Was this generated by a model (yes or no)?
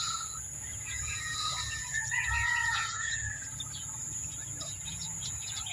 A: yes